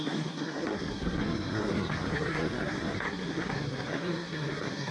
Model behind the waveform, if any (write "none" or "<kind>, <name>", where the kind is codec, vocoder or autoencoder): codec, SNAC